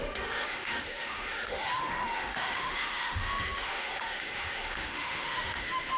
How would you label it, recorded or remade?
remade